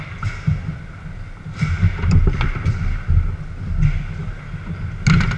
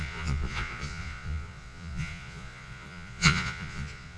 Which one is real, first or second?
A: first